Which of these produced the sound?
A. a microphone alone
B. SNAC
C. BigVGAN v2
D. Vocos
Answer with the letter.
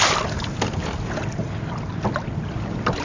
A